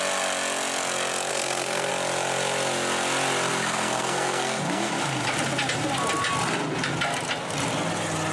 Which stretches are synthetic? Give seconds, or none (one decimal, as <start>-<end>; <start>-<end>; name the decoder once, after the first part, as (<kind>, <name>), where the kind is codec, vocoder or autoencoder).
1.3-1.9 (codec, SNAC); 3.5-4.9